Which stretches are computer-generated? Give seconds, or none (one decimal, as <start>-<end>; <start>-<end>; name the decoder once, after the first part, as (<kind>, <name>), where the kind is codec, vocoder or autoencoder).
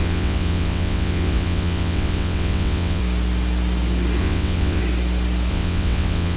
0.0-3.0 (vocoder, WaveNeXt); 4.2-4.8; 5.5-6.4